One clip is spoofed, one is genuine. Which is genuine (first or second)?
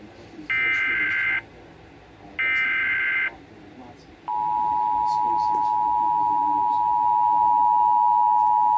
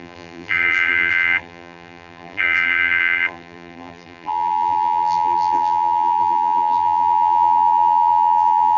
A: first